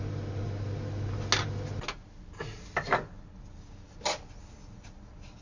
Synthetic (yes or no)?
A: no